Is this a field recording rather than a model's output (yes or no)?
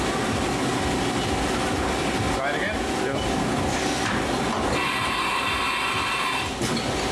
yes